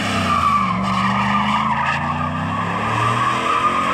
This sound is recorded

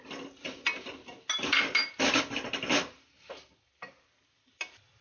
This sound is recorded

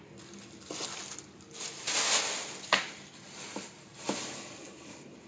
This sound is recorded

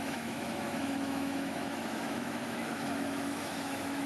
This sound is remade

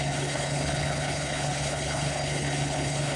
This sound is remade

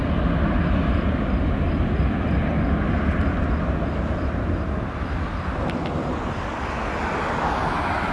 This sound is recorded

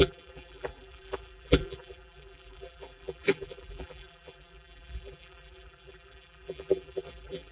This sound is remade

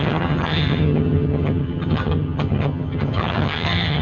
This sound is remade